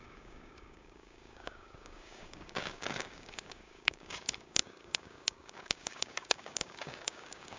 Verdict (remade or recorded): remade